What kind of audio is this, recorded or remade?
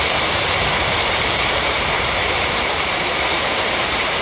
remade